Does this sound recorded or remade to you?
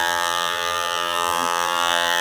remade